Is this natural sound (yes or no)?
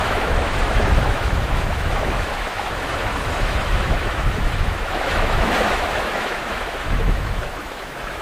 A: no